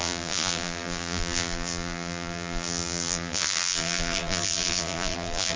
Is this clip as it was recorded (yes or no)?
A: no